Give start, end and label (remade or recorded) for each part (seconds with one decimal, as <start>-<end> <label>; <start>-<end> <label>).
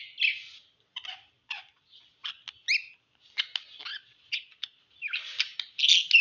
0.0-1.4 recorded; 1.4-2.0 remade; 2.0-3.9 recorded; 3.9-4.8 remade; 4.8-6.2 recorded